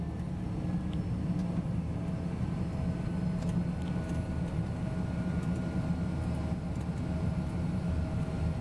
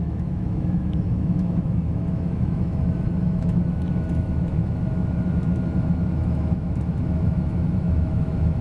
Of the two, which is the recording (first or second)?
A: first